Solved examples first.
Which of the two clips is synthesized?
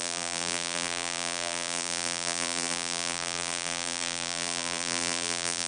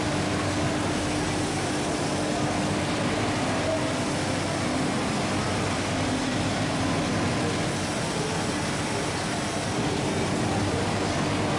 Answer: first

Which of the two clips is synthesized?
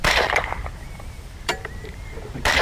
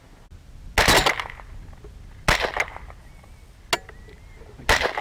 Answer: first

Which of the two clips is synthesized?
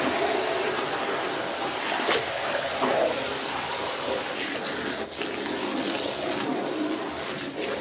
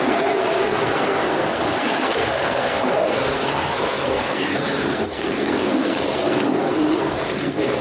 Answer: second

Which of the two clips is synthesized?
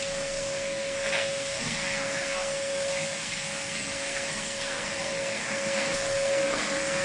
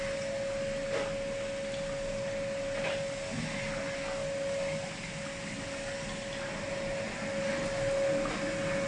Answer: first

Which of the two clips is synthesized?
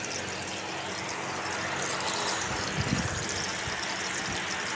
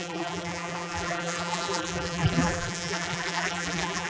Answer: second